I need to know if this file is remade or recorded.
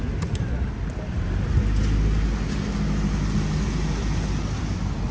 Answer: recorded